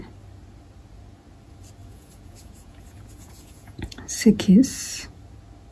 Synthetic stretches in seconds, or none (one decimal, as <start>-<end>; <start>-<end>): 1.8-5.2